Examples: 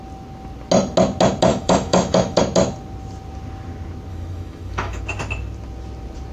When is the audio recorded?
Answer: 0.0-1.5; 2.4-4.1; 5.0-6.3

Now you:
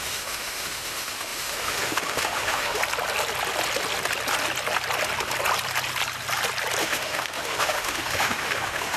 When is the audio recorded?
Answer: 2.8-6.8

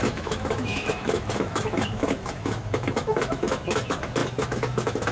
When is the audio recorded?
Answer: none

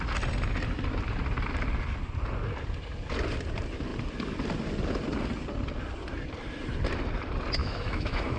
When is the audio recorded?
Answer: 0.0-7.6